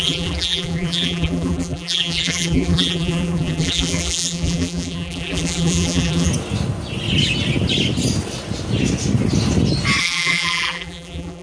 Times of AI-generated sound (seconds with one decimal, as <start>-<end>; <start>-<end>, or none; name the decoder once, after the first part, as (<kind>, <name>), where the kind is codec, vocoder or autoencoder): 0.0-6.3 (vocoder, BigVGAN v2); 10.0-11.4